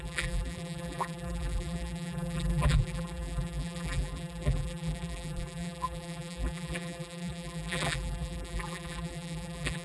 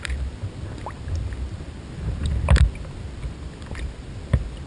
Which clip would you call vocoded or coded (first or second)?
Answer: first